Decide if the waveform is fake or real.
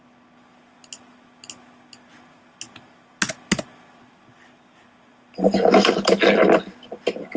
real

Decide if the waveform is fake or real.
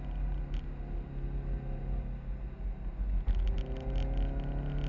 real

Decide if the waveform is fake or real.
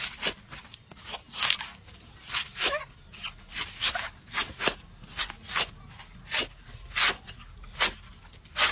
real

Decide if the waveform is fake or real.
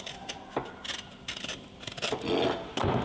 real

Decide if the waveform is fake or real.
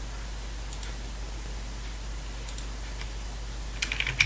real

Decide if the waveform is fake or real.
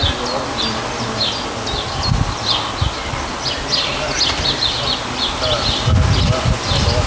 real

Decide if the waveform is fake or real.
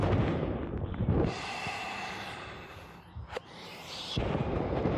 fake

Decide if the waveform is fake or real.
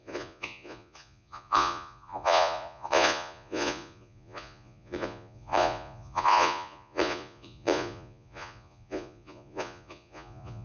fake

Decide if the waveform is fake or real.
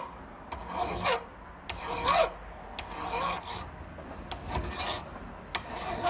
real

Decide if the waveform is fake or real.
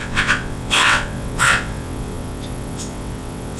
fake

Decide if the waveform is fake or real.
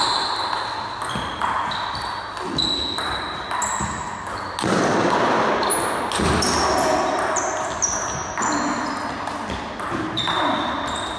real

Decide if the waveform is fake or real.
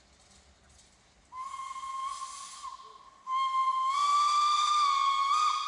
real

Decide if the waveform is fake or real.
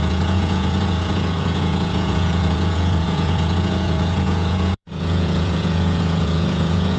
fake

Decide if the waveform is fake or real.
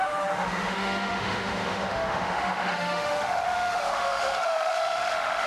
fake